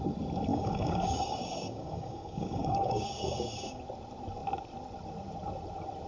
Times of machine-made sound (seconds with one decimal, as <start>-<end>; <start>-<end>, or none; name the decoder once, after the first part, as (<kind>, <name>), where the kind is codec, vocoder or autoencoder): 0.5-3.8 (codec, DAC)